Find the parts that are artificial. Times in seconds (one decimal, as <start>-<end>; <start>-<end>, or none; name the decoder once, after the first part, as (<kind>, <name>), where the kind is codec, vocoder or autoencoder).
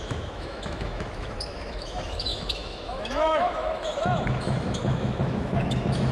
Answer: 0.0-6.1 (autoencoder, DAC-VAE)